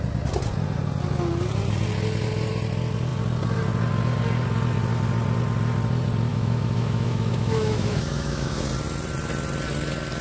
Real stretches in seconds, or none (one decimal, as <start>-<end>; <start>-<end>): 0.0-6.3; 8.7-10.2